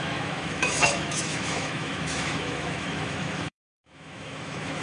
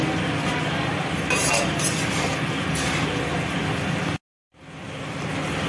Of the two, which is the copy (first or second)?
first